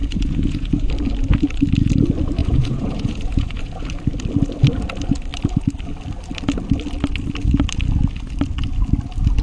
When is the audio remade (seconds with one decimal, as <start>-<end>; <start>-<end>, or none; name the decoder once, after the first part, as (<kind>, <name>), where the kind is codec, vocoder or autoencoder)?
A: 0.0-0.9 (vocoder, Vocos); 2.4-3.9